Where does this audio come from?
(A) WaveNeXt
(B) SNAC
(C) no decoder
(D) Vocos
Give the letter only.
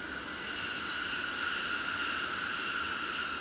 C